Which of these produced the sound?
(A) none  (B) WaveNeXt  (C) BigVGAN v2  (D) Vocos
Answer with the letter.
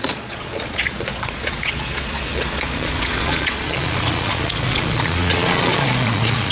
D